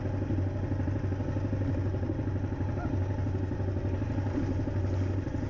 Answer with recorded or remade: recorded